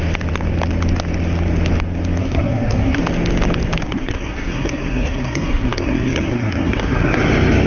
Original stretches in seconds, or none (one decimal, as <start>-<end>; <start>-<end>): 0.0-2.2; 3.0-3.8; 7.2-7.7